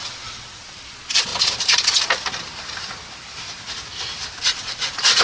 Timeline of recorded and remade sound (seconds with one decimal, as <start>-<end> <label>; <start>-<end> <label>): 0.0-1.3 remade; 1.3-4.4 recorded; 4.4-5.2 remade